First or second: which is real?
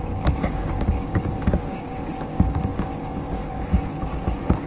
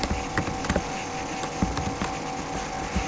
second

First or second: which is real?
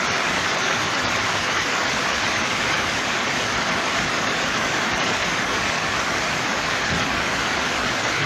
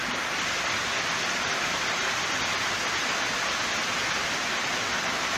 second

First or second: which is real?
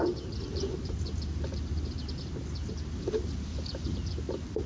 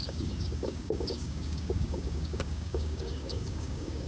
first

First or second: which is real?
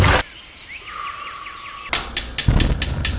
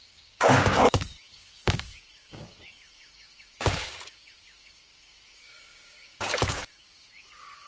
first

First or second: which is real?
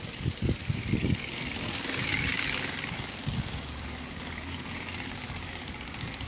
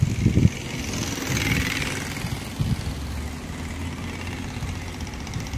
second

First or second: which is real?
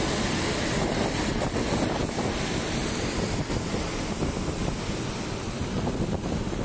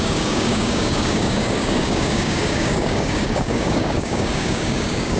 first